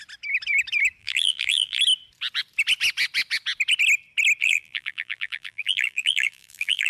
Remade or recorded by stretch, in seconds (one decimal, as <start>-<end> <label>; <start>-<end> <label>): 0.0-1.0 recorded; 1.0-1.8 remade; 1.8-4.4 recorded; 4.4-6.9 remade